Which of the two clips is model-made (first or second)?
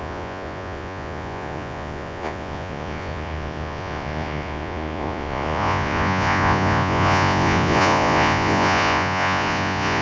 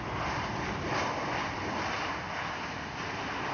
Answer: first